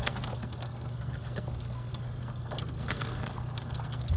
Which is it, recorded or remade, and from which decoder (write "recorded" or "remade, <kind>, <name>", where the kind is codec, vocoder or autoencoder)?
remade, codec, SNAC